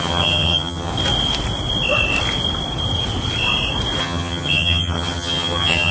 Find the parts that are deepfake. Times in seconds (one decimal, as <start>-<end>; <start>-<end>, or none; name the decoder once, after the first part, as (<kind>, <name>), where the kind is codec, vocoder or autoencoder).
0.0-0.9 (vocoder, HiFi-GAN); 4.0-5.9